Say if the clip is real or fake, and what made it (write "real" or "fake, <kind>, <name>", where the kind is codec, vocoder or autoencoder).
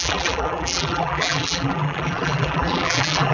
fake, vocoder, BigVGAN v2